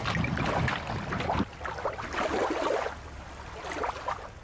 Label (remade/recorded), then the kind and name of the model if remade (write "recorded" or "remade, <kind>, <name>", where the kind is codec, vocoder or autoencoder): recorded